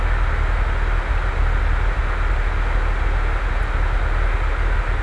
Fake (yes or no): no